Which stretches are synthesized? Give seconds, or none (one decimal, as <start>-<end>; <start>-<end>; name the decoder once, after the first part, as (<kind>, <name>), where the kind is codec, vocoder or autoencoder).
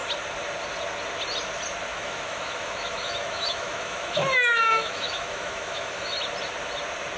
1.9-6.2 (autoencoder, DAC-VAE)